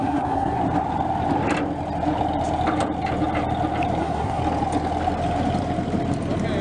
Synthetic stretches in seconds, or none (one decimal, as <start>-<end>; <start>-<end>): 0.0-0.6; 4.0-4.4